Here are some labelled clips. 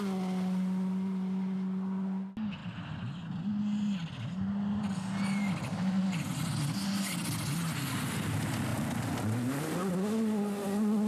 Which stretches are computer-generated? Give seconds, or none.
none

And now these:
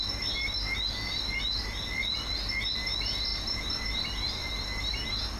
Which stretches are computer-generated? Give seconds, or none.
3.3-5.4 (vocoder, BigVGAN v2)